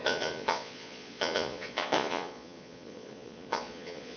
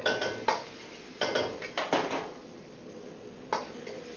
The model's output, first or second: first